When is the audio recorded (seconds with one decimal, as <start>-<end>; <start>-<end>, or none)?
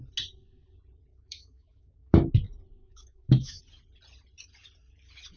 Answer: 0.0-1.1; 2.3-2.8; 3.6-5.4